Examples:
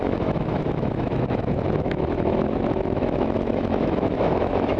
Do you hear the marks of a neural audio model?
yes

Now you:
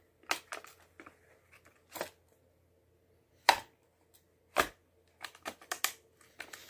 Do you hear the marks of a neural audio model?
no